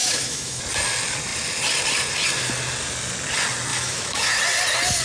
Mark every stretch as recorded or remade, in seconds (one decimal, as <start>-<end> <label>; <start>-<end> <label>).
0.0-0.6 remade; 0.6-3.7 recorded; 3.7-4.4 remade; 4.4-5.0 recorded